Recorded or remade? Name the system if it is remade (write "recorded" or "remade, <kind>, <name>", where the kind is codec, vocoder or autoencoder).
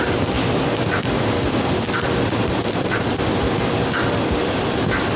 recorded